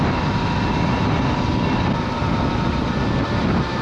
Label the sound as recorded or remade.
recorded